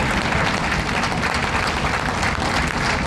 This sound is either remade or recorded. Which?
recorded